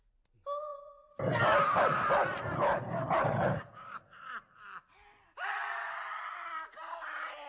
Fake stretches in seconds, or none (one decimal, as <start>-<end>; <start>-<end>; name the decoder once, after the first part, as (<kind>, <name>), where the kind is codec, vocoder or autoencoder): 0.7-4.0 (vocoder, BigVGAN v2)